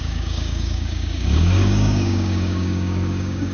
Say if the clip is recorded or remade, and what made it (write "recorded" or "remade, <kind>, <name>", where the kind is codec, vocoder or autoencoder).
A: remade, codec, DAC